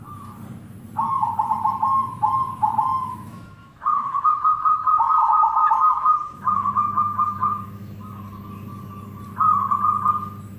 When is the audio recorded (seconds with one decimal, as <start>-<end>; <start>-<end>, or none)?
0.0-2.9; 8.1-10.6